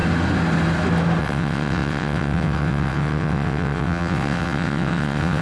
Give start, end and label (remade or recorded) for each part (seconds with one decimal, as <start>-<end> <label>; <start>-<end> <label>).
0.0-1.2 recorded; 1.2-5.4 remade